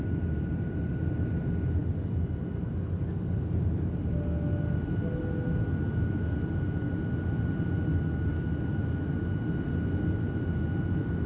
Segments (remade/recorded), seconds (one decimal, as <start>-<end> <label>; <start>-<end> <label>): 0.0-11.3 recorded